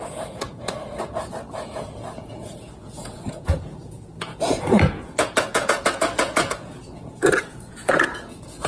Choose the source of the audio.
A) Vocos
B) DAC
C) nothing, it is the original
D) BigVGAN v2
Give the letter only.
A